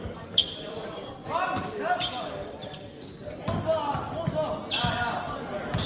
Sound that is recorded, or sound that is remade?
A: recorded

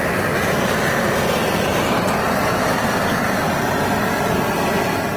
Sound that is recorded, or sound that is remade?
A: recorded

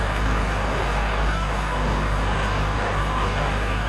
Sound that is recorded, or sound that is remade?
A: remade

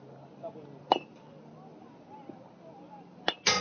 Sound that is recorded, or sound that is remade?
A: recorded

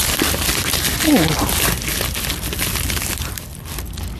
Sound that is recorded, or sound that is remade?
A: recorded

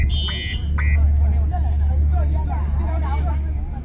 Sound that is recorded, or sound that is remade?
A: recorded